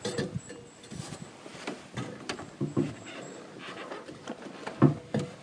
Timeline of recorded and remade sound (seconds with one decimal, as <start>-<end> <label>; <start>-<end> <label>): 0.0-1.5 recorded; 1.5-4.7 remade; 4.7-5.4 recorded